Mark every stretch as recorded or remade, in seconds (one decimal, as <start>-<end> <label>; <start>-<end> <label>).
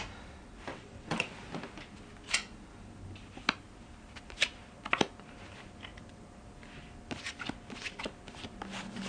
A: 0.0-0.7 recorded; 0.7-1.3 remade; 1.3-9.1 recorded